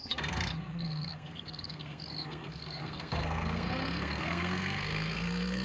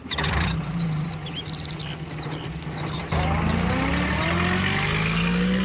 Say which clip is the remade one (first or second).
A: first